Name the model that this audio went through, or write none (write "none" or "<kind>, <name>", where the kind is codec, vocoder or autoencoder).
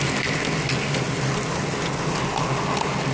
none